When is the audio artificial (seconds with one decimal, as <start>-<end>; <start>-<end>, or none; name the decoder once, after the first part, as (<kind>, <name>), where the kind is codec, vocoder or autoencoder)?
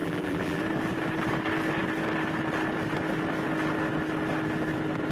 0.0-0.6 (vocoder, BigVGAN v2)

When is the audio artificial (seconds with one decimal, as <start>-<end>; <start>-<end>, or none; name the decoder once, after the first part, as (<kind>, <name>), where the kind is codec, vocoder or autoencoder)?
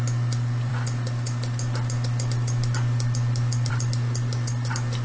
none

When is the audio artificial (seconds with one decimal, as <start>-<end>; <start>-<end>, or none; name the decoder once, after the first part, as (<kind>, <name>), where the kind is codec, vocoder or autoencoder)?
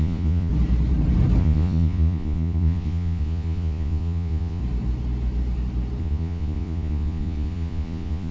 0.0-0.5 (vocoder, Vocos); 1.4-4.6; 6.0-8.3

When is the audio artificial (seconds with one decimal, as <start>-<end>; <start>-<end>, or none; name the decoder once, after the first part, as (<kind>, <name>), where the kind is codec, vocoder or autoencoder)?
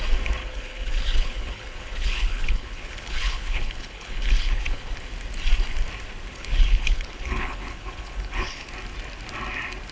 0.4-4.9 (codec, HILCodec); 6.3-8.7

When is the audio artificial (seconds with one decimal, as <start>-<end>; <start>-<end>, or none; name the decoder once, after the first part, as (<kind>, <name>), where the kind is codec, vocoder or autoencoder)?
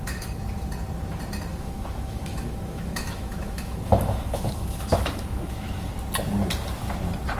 1.5-5.9 (autoencoder, DAC-VAE)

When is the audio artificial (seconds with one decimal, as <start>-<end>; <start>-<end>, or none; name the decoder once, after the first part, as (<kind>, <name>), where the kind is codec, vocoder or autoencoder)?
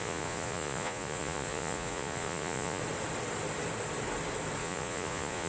0.0-2.8 (vocoder, Vocos); 4.6-5.5